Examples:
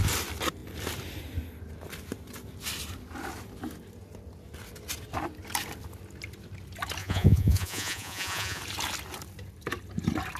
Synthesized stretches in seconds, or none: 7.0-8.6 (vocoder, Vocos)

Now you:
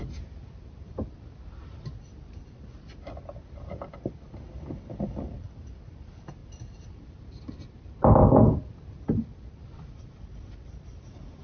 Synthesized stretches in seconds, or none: 6.4-11.4 (vocoder, BigVGAN v2)